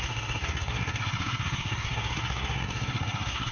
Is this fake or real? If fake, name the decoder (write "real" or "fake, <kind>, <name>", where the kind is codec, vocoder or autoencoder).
fake, codec, SNAC